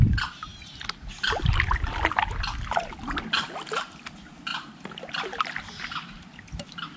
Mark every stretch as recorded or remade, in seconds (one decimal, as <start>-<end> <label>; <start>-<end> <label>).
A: 0.0-4.5 recorded; 4.5-7.0 remade